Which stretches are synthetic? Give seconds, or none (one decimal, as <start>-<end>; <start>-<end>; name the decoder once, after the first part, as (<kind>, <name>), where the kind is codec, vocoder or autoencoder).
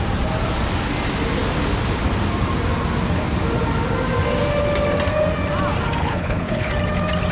6.0-6.7 (codec, HILCodec)